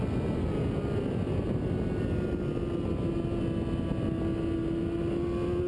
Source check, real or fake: real